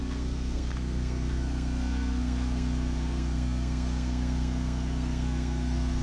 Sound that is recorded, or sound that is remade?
remade